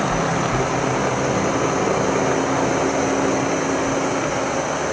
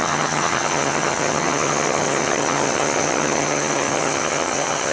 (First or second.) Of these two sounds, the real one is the first